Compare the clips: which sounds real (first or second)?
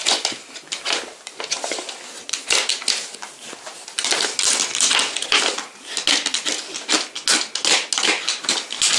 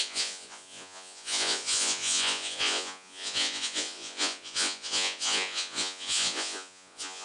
first